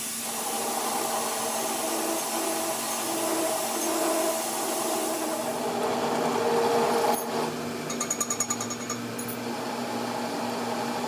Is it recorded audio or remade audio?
recorded